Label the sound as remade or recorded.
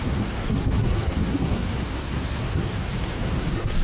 remade